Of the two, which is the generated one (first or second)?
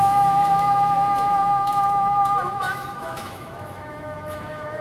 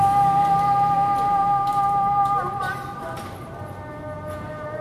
first